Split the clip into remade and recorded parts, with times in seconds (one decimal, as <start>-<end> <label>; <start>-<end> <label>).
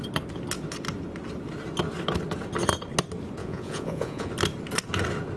0.0-3.4 recorded; 3.4-4.3 remade; 4.3-5.4 recorded